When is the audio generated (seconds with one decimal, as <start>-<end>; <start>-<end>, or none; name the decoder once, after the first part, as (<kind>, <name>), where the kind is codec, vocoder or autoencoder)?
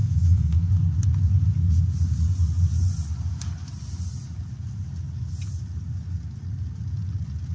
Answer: 0.0-0.7 (codec, SNAC)